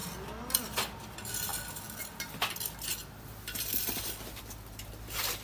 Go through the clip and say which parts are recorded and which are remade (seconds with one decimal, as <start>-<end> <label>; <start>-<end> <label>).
0.0-5.4 recorded